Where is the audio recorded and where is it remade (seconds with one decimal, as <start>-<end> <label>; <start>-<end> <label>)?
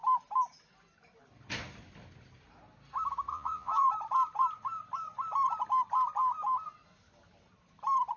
0.0-3.3 recorded; 3.3-3.9 remade; 3.9-8.2 recorded